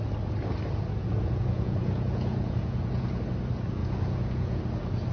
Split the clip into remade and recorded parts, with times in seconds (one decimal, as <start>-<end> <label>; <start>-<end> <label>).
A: 0.0-1.0 recorded; 1.0-3.2 remade; 3.2-3.8 recorded; 3.8-4.6 remade; 4.6-5.1 recorded